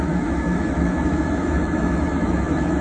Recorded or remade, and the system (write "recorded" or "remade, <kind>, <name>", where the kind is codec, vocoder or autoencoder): remade, autoencoder, DAC-VAE